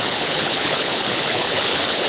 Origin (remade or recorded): remade